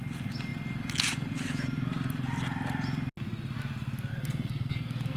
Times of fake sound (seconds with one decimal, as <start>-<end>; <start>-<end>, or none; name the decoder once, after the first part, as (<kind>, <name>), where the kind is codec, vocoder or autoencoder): 4.1-5.2 (codec, SNAC)